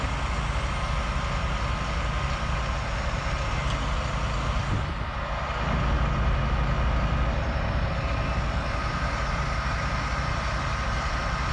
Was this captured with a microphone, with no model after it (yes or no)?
yes